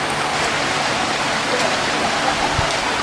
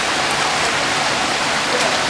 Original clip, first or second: first